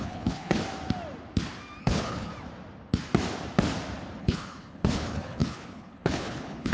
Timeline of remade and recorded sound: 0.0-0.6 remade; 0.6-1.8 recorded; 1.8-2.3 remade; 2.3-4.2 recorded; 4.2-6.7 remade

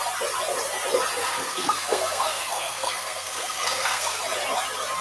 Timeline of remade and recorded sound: 0.0-1.2 recorded; 1.2-4.2 remade; 4.2-5.0 recorded